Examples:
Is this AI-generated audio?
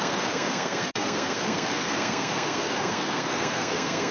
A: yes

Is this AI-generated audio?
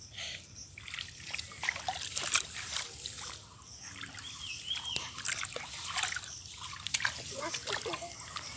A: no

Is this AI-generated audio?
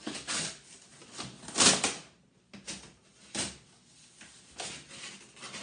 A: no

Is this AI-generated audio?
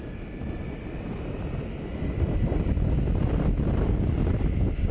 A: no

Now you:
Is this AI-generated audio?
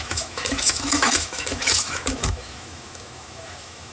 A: yes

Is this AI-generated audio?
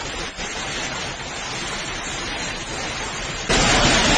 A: no